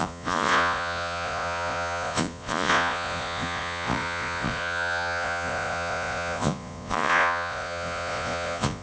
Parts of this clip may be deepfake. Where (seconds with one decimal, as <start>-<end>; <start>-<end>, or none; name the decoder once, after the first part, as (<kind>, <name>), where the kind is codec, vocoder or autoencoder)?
0.0-8.8 (vocoder, Vocos)